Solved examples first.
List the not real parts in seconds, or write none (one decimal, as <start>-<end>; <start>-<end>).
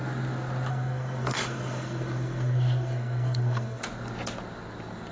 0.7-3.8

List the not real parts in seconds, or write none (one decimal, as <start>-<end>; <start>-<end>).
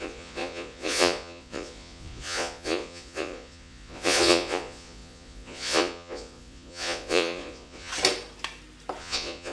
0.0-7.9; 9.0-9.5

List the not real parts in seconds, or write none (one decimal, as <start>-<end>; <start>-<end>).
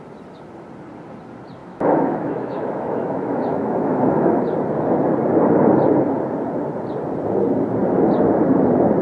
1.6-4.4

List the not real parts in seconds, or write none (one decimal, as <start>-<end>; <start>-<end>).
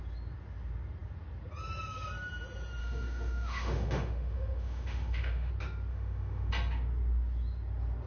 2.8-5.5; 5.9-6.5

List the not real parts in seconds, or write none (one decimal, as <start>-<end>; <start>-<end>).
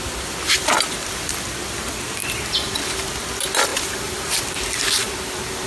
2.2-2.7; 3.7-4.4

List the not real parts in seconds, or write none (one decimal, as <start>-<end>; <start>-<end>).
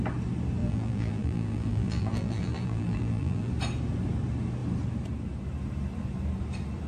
0.6-3.5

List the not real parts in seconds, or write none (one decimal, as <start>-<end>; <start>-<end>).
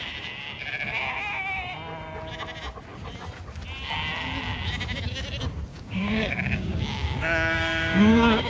5.7-8.5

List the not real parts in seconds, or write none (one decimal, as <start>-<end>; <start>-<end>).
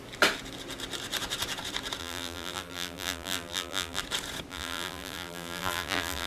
2.0-4.0; 4.5-6.3